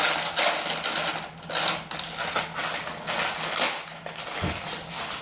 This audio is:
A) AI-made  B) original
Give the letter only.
B